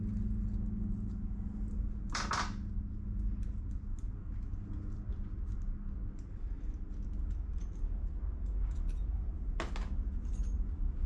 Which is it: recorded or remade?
recorded